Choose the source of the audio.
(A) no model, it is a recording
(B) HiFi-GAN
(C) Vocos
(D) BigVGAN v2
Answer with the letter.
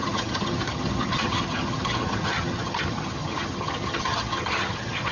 B